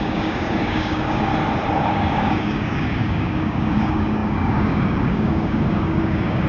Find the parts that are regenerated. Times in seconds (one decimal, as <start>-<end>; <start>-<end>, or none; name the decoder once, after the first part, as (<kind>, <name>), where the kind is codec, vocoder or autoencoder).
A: 0.0-1.3 (codec, DAC); 1.9-6.5